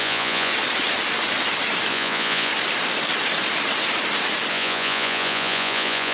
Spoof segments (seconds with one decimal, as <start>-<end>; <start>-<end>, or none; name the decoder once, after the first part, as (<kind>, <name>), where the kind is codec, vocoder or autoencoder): 0.0-0.5 (vocoder, Vocos); 1.9-2.5; 4.5-6.1